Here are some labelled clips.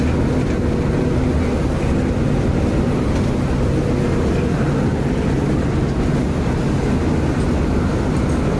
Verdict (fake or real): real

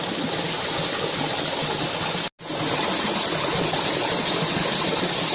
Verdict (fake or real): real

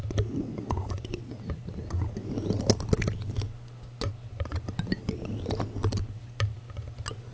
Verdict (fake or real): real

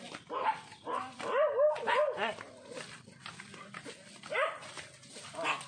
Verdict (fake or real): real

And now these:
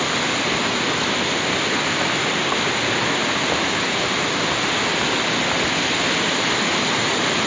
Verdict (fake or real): real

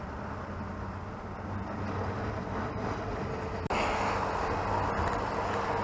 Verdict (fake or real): real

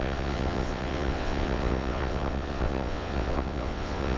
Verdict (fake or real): fake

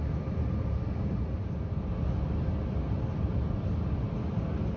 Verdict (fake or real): real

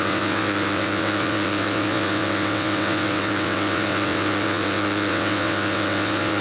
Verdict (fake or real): fake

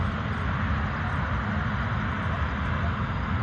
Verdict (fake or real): real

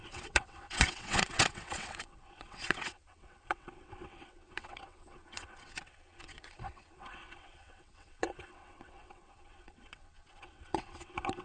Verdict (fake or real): fake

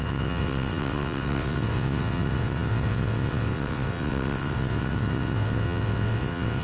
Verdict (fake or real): fake